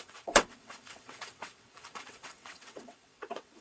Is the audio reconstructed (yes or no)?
yes